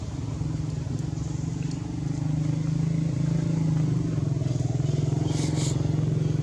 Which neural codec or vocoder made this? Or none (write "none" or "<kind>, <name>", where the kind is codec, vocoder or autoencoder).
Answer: none